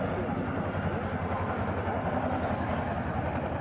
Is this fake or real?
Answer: real